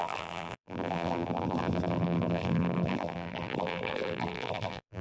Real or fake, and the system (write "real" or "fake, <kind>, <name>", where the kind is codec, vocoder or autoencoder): fake, vocoder, BigVGAN v2